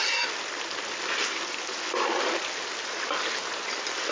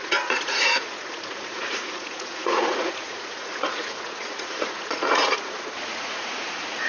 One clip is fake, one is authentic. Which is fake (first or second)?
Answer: second